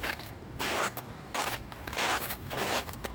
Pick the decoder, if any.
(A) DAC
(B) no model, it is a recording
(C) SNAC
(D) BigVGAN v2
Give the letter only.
A